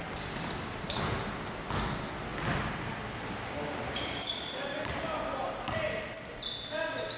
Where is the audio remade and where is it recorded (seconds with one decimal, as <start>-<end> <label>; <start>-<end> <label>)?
0.0-7.2 recorded